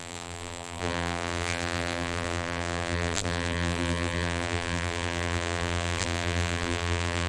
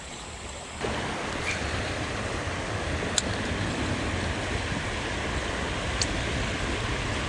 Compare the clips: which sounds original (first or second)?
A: second